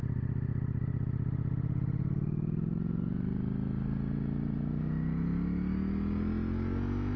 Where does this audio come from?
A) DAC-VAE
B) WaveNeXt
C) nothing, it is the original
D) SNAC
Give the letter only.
C